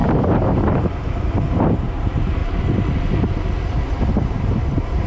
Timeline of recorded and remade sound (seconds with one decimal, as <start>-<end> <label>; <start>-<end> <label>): 0.0-2.4 remade; 2.4-4.1 recorded; 4.1-5.1 remade